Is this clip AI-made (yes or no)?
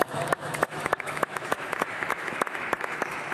yes